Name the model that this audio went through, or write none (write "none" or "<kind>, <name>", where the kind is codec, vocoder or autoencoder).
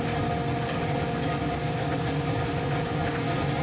none